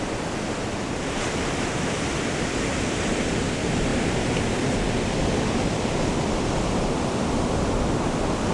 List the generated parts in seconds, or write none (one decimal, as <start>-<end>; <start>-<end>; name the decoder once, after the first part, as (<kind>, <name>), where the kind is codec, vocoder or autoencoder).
none